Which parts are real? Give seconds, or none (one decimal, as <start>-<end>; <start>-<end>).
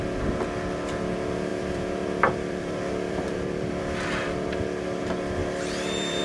0.0-1.5; 5.0-5.4